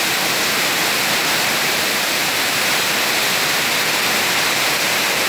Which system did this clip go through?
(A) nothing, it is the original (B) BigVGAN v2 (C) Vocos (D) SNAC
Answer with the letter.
B